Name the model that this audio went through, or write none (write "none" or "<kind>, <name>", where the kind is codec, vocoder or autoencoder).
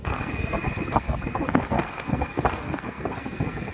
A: codec, SNAC